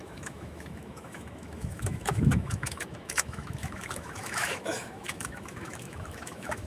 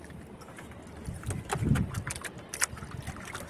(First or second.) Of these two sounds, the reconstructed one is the first